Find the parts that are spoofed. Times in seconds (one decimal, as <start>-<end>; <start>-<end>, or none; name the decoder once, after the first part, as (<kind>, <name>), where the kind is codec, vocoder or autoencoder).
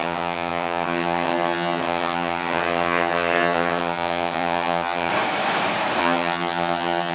0.0-5.1 (vocoder, HiFi-GAN); 6.0-7.1